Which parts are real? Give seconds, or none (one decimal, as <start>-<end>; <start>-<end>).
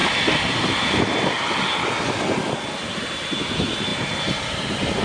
0.0-5.0